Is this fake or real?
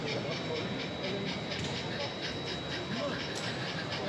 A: real